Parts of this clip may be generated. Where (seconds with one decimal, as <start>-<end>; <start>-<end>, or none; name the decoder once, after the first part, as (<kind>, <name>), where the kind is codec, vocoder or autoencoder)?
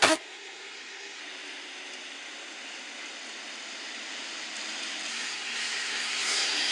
0.0-1.2 (codec, SNAC); 5.1-6.7